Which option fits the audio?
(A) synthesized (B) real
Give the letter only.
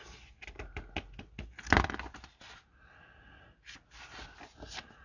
B